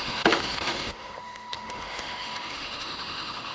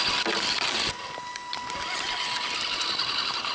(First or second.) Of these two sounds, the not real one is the first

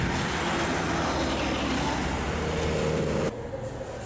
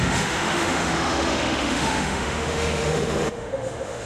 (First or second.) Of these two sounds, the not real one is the second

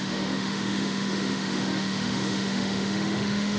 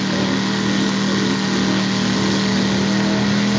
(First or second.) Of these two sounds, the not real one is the first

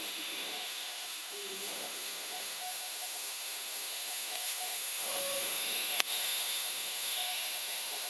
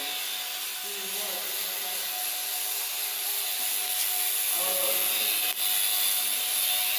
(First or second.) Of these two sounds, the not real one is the first